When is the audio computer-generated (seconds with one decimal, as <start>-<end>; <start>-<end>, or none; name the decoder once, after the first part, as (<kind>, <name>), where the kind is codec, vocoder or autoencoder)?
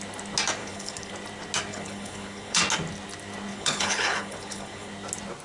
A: 0.6-1.1 (codec, HILCodec); 1.7-2.6; 3.5-4.9